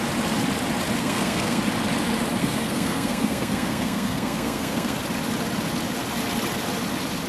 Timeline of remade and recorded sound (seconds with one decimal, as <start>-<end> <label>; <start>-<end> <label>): 0.0-1.0 recorded; 1.0-1.6 remade; 1.6-2.4 recorded; 2.4-5.0 remade; 5.0-7.3 recorded